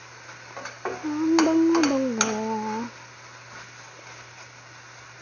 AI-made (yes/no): no